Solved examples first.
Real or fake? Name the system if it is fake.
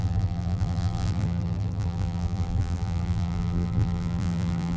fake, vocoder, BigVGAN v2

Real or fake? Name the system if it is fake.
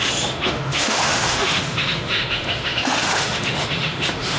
fake, autoencoder, DAC-VAE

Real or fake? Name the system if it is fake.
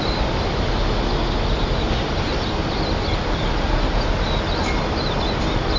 real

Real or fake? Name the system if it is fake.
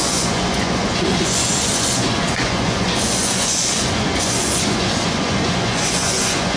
fake, vocoder, Vocos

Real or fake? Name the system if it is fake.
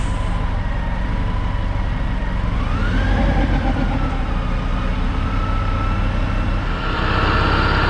real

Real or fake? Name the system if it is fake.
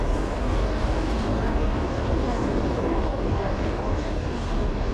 fake, codec, DAC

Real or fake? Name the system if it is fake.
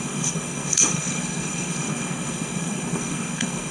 fake, codec, SNAC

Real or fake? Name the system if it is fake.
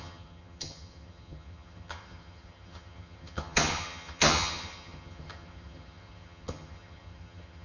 fake, vocoder, HiFi-GAN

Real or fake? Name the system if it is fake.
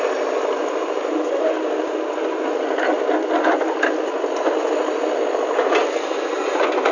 real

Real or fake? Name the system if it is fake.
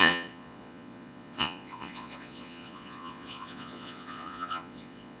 fake, vocoder, Vocos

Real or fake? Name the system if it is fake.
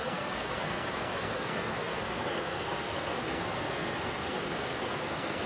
fake, codec, SNAC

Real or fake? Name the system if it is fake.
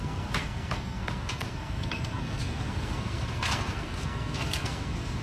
fake, codec, SNAC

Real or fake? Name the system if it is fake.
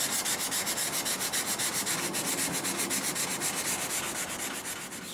real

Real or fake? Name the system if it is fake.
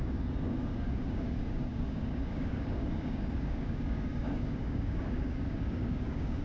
fake, codec, DAC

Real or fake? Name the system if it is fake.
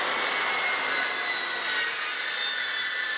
real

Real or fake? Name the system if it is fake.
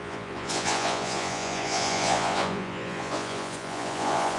fake, vocoder, Vocos